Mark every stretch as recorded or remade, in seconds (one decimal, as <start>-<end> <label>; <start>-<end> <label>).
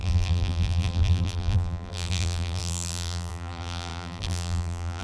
0.0-5.0 remade